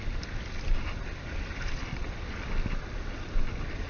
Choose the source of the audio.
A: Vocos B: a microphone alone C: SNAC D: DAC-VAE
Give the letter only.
B